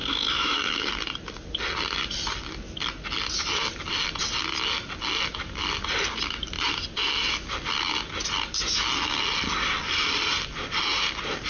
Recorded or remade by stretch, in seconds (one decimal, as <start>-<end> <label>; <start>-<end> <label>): 0.0-0.9 remade; 0.9-11.5 recorded